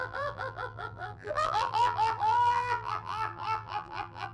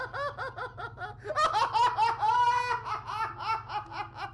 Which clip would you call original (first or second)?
second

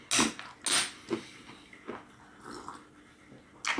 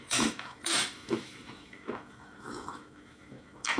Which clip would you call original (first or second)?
first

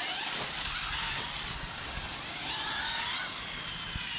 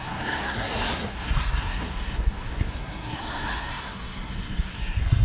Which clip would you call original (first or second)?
first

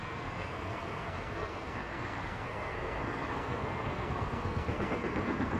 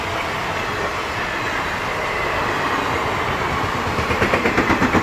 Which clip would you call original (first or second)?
second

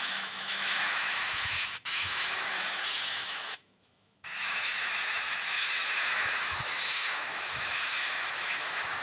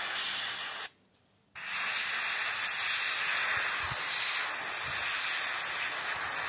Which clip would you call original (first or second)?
second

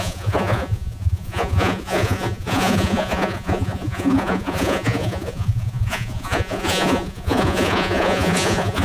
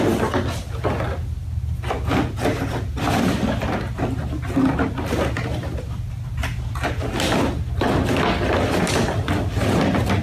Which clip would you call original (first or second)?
second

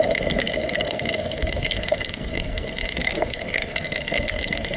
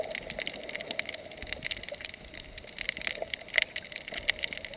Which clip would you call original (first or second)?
second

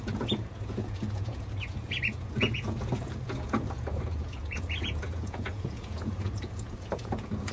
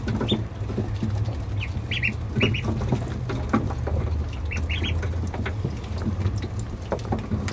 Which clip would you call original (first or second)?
second